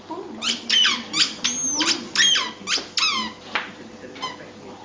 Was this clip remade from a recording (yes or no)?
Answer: no